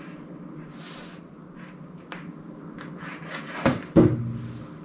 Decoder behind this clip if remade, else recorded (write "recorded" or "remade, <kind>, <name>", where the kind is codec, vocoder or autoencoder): recorded